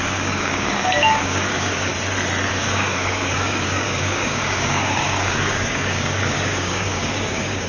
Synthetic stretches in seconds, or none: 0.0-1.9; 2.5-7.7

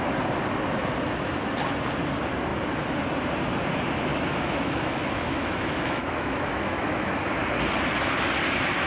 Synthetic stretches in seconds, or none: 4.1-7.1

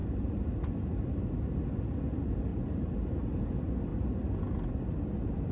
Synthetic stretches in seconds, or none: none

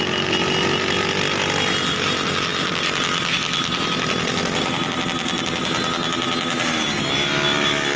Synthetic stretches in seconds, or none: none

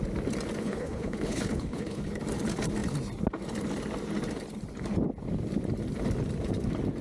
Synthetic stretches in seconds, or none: 0.6-2.2

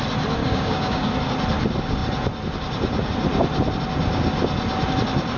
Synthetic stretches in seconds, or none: 0.4-1.1